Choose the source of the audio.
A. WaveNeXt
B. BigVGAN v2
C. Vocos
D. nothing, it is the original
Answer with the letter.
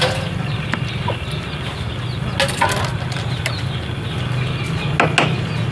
D